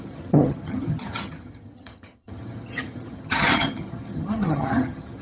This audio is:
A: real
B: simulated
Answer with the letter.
B